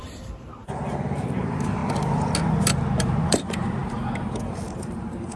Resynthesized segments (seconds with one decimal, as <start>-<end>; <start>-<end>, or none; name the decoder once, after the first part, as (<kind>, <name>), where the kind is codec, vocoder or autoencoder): 0.0-1.8 (vocoder, BigVGAN v2); 3.2-5.4